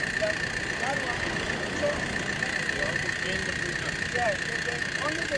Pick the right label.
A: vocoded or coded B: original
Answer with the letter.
B